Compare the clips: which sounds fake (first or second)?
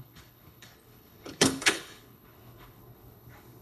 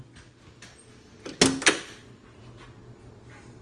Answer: first